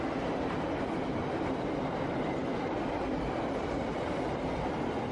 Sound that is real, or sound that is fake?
real